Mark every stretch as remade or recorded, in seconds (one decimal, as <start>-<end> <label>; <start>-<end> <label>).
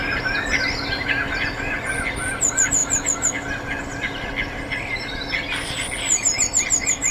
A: 0.0-7.1 recorded